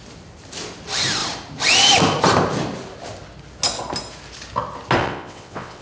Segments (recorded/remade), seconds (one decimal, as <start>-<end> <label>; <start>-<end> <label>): 0.0-5.0 recorded; 5.0-5.8 remade